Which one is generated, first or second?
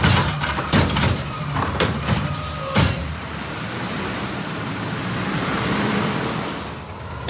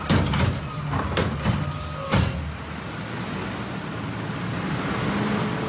first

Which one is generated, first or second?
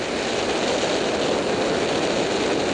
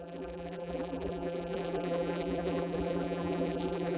second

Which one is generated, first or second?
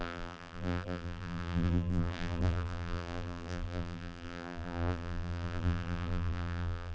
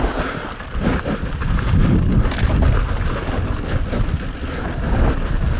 first